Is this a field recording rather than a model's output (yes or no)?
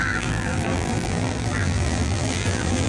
no